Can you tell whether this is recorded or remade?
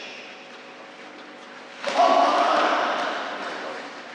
recorded